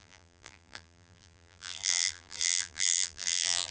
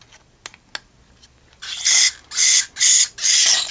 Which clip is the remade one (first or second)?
first